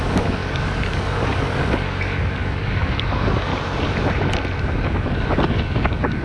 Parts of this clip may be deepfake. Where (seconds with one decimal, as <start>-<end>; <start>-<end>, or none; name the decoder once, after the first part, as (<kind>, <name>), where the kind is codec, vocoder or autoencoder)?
0.0-3.5 (codec, DAC); 4.6-6.2

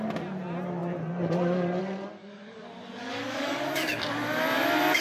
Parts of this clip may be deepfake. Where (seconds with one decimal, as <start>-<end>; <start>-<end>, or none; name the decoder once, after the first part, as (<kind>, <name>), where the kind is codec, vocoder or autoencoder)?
2.2-4.0 (codec, DAC)

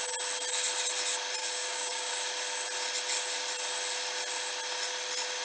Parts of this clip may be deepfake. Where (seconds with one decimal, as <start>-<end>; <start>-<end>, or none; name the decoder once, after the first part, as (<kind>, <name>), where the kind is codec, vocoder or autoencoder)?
1.4-2.1 (codec, DAC)

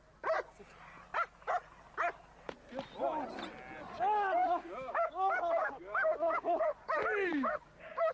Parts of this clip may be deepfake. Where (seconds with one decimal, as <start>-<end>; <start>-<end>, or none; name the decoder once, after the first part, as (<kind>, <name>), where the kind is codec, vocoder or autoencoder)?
4.4-6.6 (codec, DAC); 7.3-8.1

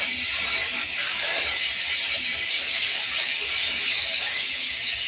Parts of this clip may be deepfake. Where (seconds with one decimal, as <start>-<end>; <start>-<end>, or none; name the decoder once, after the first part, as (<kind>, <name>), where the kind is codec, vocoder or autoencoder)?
0.6-1.6 (codec, DAC); 2.3-5.1

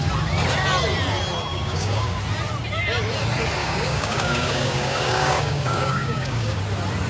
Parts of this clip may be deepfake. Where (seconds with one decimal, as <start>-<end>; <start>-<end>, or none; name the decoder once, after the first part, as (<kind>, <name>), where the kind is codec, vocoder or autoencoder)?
1.5-2.2 (codec, DAC); 3.6-6.6

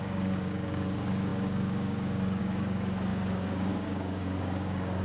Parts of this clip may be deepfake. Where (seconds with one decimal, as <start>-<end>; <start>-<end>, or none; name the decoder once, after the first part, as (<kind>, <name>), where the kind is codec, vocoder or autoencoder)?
0.0-5.0 (codec, DAC)